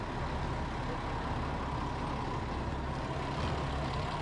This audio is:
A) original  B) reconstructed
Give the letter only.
A